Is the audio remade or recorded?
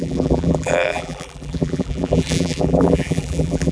remade